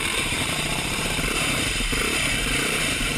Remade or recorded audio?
remade